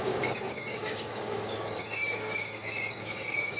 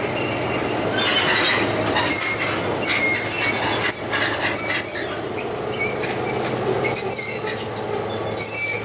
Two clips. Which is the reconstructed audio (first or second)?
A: first